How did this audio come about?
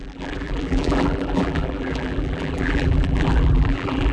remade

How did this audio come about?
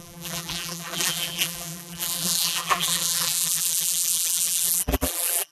remade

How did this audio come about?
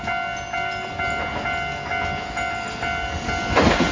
recorded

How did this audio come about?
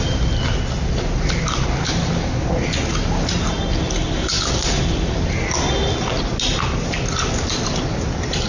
recorded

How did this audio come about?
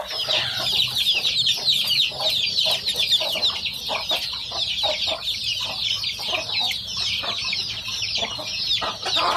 recorded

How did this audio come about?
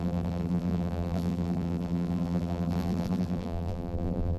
remade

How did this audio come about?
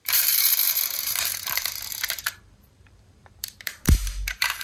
remade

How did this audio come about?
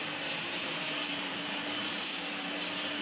remade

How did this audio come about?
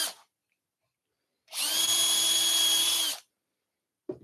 remade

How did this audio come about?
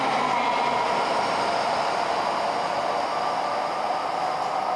recorded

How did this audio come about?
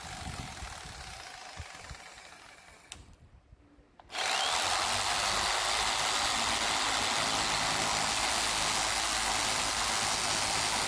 recorded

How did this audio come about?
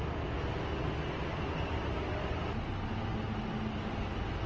recorded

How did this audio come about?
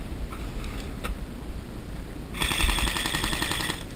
recorded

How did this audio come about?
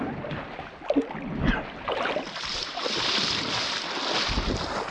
recorded